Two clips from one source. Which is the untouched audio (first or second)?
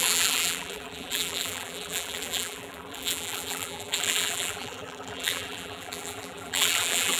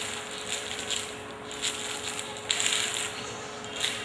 second